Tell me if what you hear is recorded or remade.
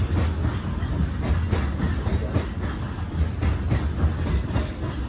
recorded